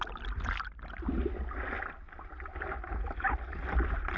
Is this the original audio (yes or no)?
yes